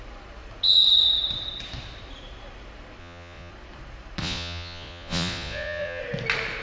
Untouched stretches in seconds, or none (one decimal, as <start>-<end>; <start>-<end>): 0.0-3.0; 3.5-4.2; 6.0-6.6

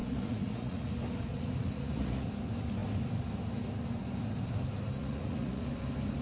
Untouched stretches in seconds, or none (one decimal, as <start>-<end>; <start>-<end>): 0.9-1.3; 2.3-5.0; 5.6-6.2